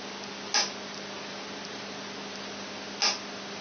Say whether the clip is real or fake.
real